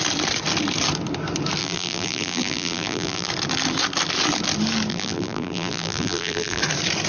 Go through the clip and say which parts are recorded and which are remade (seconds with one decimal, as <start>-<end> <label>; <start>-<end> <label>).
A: 0.0-1.6 recorded; 1.6-3.3 remade; 3.3-4.9 recorded; 4.9-6.6 remade; 6.6-7.1 recorded